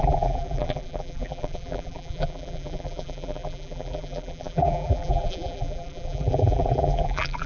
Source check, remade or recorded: remade